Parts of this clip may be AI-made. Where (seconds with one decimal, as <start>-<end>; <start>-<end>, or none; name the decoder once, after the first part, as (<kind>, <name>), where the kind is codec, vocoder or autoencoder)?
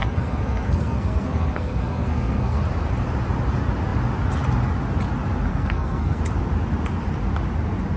0.0-2.6 (codec, SNAC); 5.5-6.2